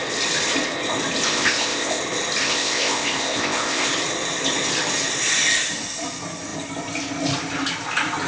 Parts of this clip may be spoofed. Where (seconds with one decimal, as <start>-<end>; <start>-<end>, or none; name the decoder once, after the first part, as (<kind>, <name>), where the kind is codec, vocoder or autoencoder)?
1.3-2.0 (codec, ZipCodec); 2.4-3.9